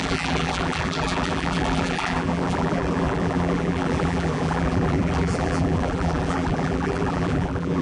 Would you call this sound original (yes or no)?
no